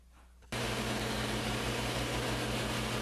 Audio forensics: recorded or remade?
recorded